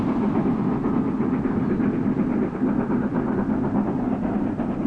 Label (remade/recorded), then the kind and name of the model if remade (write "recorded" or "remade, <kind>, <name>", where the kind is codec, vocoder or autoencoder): recorded